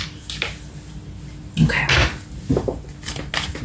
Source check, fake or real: real